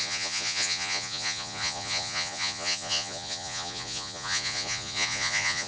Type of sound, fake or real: fake